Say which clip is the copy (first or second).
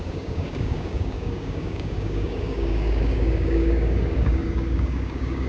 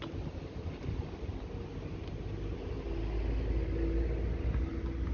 first